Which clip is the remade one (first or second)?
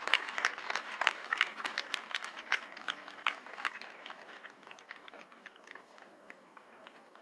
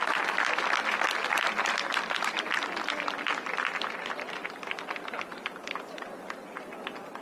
first